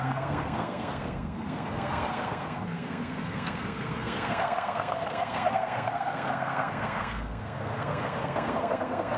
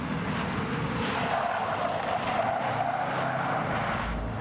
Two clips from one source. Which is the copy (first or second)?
first